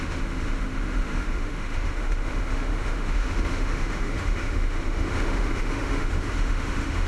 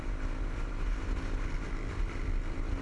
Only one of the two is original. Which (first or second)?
second